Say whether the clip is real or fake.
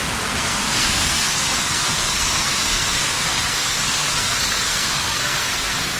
fake